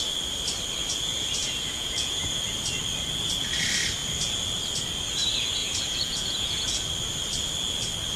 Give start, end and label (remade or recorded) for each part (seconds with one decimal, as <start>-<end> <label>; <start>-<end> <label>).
0.0-1.4 recorded; 1.4-2.4 remade; 2.4-5.6 recorded; 5.6-6.8 remade; 6.8-8.2 recorded